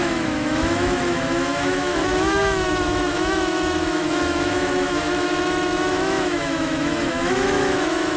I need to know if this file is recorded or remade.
remade